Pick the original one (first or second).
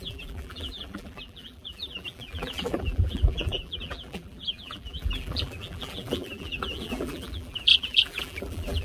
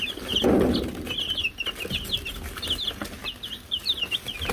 second